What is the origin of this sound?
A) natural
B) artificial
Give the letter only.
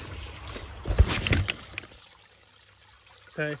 A